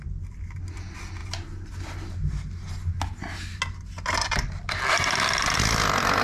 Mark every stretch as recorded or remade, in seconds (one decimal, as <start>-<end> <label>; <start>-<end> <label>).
0.0-6.2 recorded